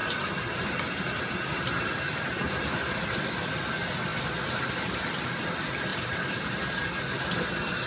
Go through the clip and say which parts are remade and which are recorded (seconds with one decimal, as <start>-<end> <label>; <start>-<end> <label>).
0.0-3.2 remade; 3.2-5.9 recorded; 5.9-6.5 remade; 6.5-7.9 recorded